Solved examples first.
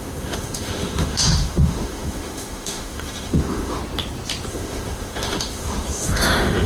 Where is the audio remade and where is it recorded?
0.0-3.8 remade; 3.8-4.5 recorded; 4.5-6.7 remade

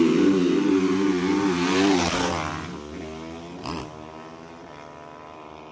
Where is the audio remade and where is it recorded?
0.0-5.7 recorded